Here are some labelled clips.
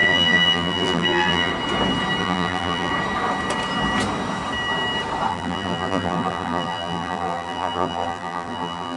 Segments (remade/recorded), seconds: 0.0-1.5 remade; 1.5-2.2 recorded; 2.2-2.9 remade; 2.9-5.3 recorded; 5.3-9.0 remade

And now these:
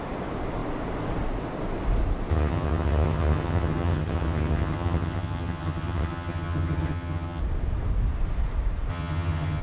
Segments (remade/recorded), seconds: 0.0-2.3 recorded; 2.3-7.4 remade; 7.4-8.9 recorded; 8.9-9.6 remade

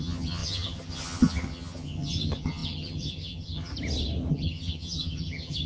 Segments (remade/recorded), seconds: 0.0-3.7 remade; 3.7-4.3 recorded; 4.3-5.7 remade

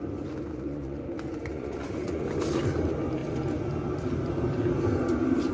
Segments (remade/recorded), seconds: 0.0-0.5 recorded; 0.5-1.0 remade; 1.0-1.5 recorded; 1.5-2.2 remade; 2.2-5.5 recorded

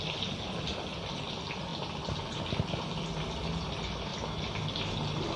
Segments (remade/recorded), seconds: 0.0-5.4 recorded

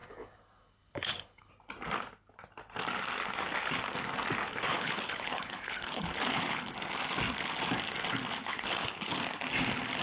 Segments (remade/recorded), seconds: 0.0-1.5 remade; 1.5-4.4 recorded; 4.4-6.7 remade; 6.7-8.5 recorded; 8.5-9.2 remade; 9.2-10.0 recorded

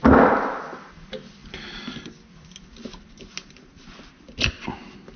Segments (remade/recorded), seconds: 0.0-5.2 recorded